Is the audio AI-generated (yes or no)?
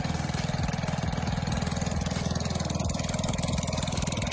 no